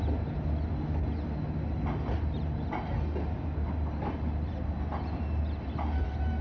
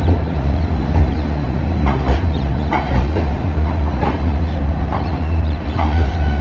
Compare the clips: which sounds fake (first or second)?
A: second